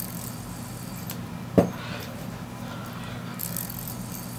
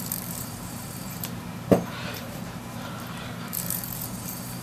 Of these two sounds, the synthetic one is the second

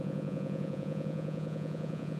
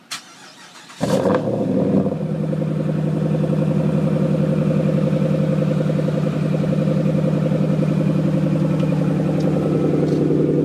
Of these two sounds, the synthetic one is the first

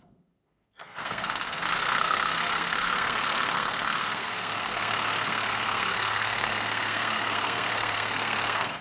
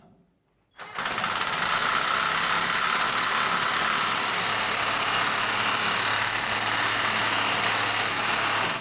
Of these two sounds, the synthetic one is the first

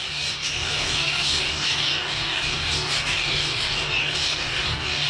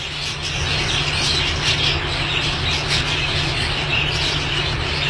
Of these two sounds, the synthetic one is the first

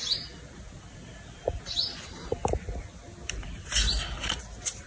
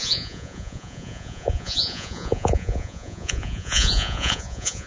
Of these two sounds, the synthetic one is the second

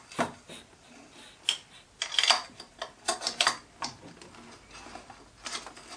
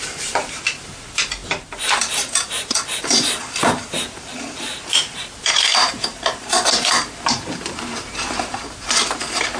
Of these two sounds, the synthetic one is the second